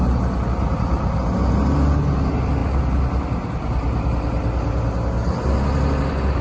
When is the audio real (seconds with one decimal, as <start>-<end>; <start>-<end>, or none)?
0.0-6.4